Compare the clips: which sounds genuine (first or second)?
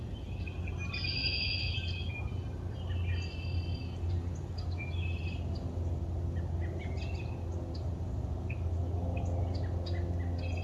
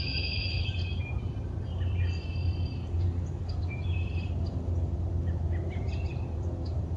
first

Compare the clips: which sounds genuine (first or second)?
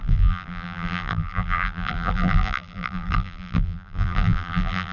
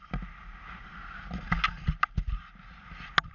second